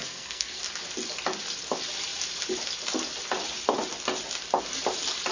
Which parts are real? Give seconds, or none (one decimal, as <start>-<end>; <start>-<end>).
0.6-5.3